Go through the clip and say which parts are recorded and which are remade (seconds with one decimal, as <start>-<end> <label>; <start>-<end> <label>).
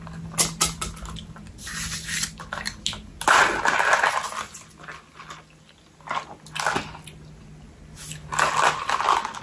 0.0-9.4 recorded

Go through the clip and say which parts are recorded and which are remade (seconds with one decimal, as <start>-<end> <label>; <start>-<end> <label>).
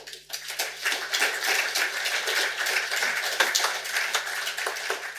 0.0-5.2 recorded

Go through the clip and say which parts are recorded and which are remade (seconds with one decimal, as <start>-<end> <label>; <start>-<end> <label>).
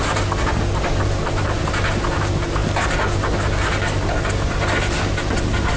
0.0-5.8 recorded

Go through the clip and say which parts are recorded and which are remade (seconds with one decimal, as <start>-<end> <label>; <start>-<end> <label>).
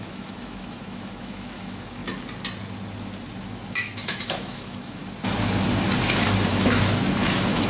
0.0-2.0 remade; 2.0-3.7 recorded; 3.7-5.0 remade; 5.0-6.5 recorded; 6.5-7.7 remade